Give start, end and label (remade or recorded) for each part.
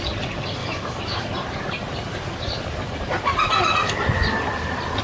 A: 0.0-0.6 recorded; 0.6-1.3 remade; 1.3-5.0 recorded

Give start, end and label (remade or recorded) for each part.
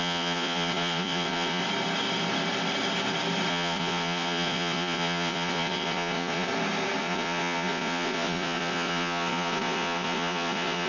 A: 0.0-1.6 remade; 1.6-3.5 recorded; 3.5-6.5 remade; 6.5-7.0 recorded; 7.0-10.9 remade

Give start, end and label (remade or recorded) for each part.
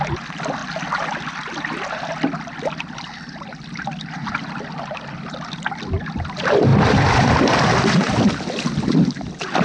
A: 0.0-6.7 recorded; 6.7-8.1 remade; 8.1-9.6 recorded